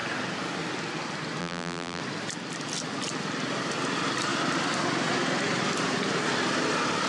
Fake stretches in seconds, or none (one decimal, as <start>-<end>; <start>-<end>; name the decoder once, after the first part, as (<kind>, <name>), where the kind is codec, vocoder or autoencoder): 1.4-2.0 (vocoder, BigVGAN v2)